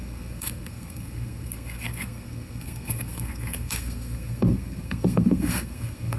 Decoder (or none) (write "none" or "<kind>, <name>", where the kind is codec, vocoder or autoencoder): codec, SNAC